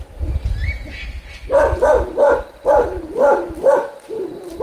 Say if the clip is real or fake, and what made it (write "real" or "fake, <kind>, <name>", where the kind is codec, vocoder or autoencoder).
real